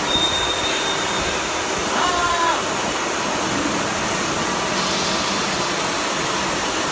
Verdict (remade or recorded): recorded